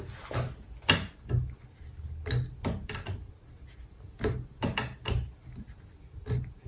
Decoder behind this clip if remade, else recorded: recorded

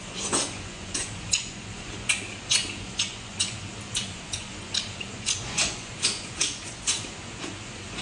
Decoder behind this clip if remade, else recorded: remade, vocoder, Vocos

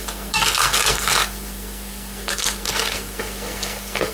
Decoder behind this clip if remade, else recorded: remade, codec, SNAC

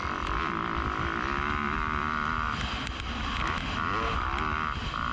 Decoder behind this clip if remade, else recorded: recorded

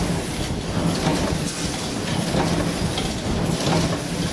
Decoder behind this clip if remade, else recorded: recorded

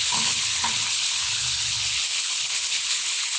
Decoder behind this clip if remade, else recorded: remade, codec, HILCodec